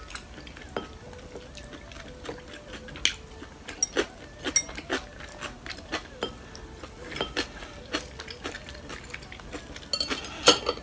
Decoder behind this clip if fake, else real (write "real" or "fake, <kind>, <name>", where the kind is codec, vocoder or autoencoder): real